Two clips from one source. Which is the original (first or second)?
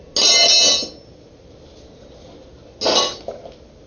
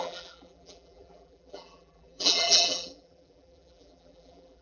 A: first